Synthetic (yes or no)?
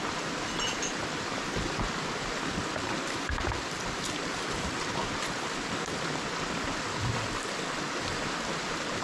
yes